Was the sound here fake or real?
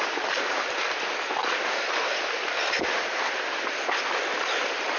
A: real